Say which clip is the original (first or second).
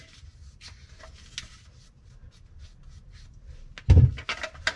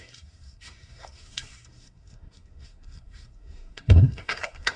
first